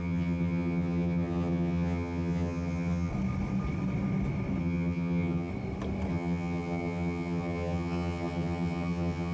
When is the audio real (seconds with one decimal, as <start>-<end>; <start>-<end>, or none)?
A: 3.1-4.6; 5.5-6.1